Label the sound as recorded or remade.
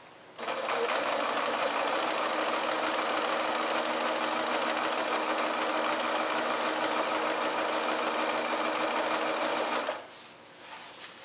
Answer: recorded